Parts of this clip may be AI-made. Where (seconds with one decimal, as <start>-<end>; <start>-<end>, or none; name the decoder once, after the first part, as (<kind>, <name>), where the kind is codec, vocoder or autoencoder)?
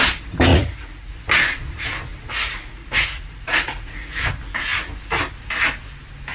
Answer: 0.5-1.1 (vocoder, Vocos); 2.1-4.3